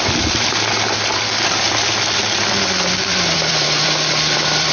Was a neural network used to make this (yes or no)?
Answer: yes